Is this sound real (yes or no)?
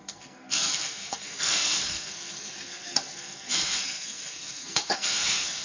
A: no